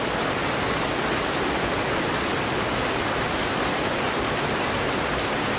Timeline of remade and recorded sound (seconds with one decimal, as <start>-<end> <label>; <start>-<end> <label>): 0.0-2.3 recorded; 2.3-4.0 remade; 4.0-5.6 recorded